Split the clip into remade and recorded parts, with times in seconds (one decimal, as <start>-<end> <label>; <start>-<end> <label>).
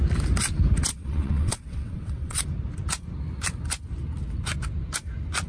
0.0-0.9 recorded; 0.9-2.4 remade; 2.4-5.5 recorded